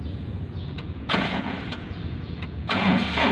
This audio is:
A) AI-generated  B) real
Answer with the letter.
A